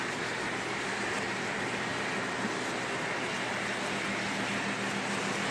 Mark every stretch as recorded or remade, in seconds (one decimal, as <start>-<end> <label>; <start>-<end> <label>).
0.0-5.5 recorded